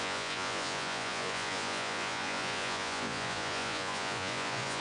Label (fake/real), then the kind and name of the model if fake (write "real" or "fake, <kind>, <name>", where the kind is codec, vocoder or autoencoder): fake, vocoder, Vocos